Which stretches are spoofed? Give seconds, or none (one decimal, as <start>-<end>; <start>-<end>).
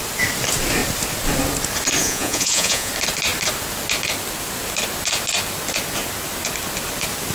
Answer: 2.0-2.9